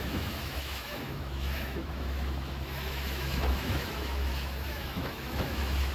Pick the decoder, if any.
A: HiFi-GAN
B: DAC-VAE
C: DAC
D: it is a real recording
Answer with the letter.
B